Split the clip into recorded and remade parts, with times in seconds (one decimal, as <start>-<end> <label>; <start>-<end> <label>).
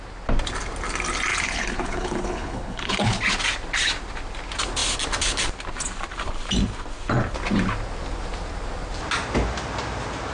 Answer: 0.0-1.3 recorded; 1.3-3.2 remade; 3.2-10.3 recorded